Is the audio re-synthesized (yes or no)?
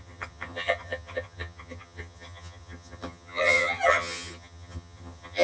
yes